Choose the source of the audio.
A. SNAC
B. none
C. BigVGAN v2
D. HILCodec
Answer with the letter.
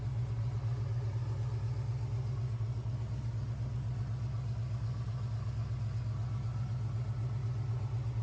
B